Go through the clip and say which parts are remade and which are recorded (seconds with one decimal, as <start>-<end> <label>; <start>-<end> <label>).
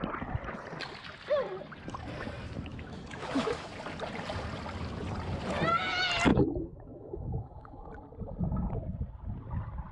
0.0-2.7 recorded; 2.7-3.7 remade; 3.7-6.3 recorded; 6.3-7.9 remade; 7.9-9.9 recorded